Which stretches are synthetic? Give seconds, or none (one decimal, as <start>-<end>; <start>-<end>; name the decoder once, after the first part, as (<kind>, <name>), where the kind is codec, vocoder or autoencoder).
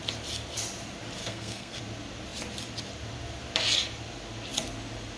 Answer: 1.2-1.8 (codec, SNAC)